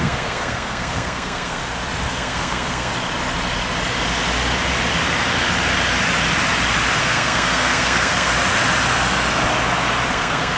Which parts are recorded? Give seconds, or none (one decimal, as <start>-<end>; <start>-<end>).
1.6-2.1; 2.9-7.0; 8.3-10.1